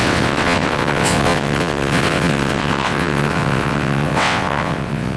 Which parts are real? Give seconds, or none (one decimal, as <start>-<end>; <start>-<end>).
none